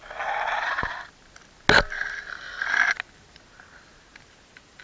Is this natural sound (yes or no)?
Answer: yes